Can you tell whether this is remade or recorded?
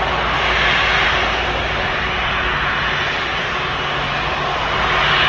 recorded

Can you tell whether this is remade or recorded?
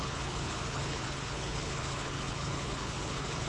remade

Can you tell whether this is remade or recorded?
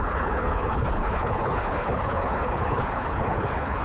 remade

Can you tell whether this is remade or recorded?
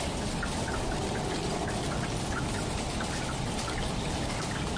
recorded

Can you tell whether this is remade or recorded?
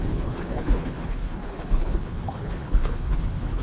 remade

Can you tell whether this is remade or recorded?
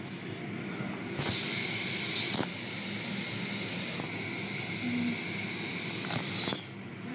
recorded